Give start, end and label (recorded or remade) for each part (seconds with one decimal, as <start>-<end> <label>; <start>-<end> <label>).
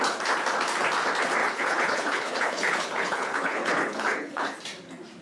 0.0-1.4 recorded; 1.4-4.5 remade; 4.5-5.2 recorded